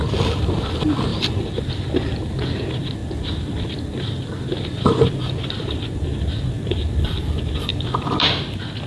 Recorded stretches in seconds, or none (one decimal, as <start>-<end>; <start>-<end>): 1.1-1.7; 3.0-5.2